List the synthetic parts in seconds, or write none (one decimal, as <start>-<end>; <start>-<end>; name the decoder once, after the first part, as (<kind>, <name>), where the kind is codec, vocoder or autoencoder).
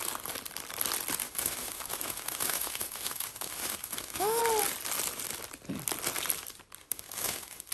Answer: 1.2-4.4 (autoencoder, DAC-VAE); 6.8-7.7